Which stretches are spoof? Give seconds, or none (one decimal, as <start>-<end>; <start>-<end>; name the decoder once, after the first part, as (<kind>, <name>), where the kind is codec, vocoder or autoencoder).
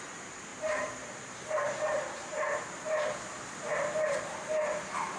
0.5-3.6 (vocoder, BigVGAN v2)